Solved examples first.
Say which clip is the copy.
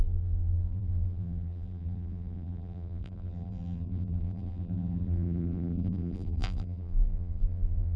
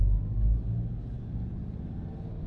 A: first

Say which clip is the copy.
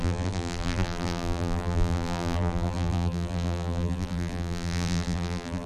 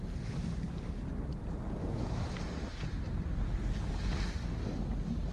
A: first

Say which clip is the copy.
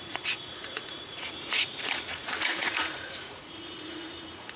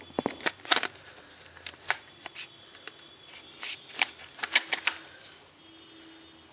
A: first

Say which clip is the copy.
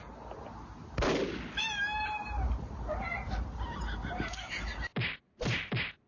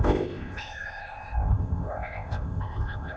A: second